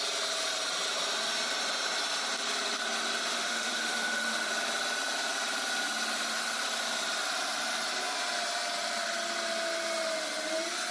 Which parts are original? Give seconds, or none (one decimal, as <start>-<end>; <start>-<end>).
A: 0.0-3.3; 4.5-10.9